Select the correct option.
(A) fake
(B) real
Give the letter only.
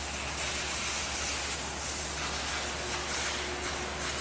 B